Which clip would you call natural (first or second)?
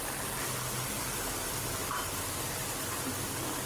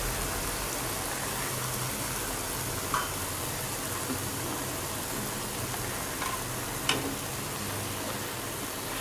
second